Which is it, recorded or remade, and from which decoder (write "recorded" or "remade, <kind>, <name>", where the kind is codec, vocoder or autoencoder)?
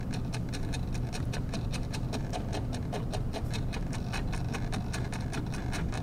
remade, vocoder, BigVGAN v2